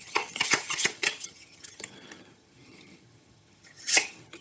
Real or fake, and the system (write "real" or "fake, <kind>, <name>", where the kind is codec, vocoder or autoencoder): fake, vocoder, HiFi-GAN